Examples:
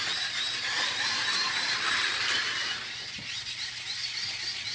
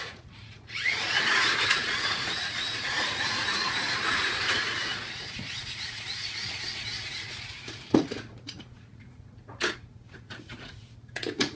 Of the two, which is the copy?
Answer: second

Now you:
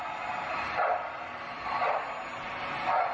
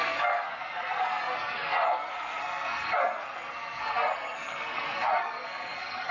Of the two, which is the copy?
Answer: second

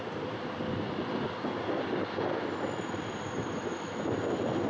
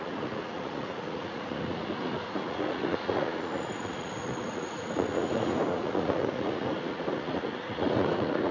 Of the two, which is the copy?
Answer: second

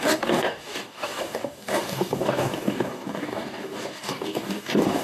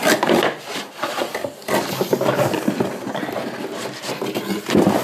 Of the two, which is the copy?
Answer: first